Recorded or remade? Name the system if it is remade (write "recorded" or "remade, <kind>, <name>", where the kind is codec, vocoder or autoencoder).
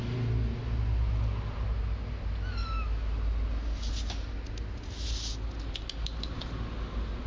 recorded